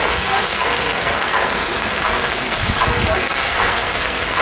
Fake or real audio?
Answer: fake